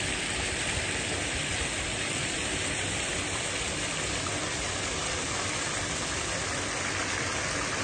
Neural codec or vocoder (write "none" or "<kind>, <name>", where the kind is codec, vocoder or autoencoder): none